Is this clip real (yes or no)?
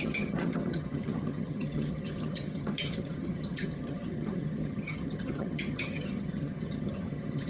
no